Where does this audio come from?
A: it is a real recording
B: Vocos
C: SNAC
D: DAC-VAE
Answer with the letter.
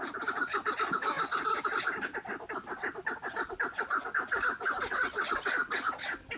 A